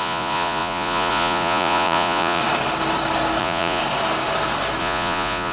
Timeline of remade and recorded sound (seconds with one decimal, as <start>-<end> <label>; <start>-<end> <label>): 0.0-2.4 remade; 2.4-3.4 recorded; 3.4-3.8 remade; 3.8-4.8 recorded; 4.8-5.5 remade